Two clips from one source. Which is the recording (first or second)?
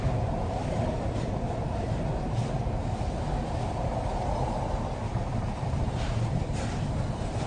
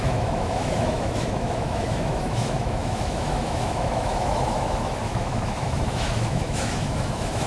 first